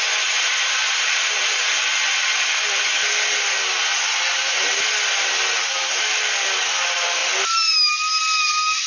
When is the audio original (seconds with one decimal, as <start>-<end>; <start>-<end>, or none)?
0.0-8.9